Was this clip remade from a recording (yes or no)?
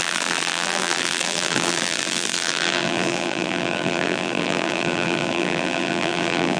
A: yes